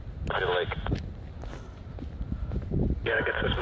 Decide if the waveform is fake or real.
real